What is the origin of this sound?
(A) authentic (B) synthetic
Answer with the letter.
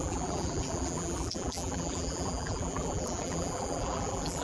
B